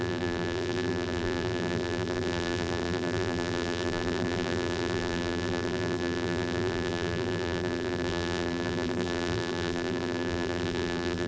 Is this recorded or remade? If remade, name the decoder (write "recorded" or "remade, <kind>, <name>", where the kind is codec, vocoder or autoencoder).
remade, vocoder, BigVGAN v2